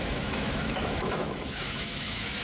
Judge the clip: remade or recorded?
remade